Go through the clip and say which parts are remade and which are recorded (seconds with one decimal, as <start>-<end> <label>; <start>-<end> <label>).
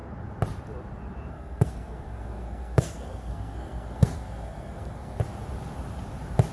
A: 0.0-1.3 recorded; 1.3-5.2 remade; 5.2-6.5 recorded